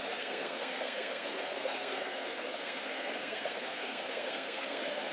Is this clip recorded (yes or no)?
no